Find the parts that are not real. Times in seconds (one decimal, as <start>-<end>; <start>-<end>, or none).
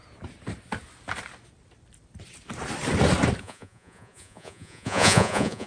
3.4-5.7